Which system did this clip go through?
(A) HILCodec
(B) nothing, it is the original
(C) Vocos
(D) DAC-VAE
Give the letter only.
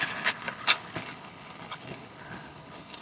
A